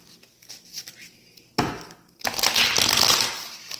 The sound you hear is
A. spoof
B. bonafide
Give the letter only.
B